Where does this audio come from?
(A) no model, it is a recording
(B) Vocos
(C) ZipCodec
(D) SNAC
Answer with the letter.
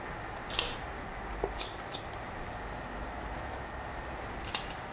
A